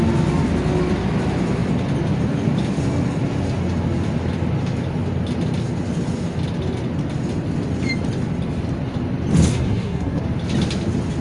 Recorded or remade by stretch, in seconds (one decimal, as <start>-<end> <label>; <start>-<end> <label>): 0.0-9.5 recorded; 9.5-10.2 remade; 10.2-11.2 recorded

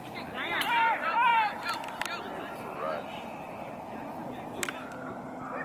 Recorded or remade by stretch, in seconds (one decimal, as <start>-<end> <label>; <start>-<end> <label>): 0.0-5.6 recorded

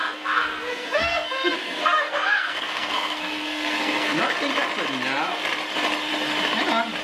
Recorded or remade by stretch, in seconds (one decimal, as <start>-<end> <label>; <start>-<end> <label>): 0.0-4.2 remade; 4.2-7.0 recorded